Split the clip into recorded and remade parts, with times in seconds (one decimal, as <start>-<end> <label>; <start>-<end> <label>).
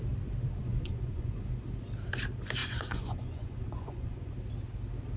0.0-0.6 recorded; 0.6-1.6 remade; 1.6-2.6 recorded; 2.6-4.3 remade; 4.3-5.2 recorded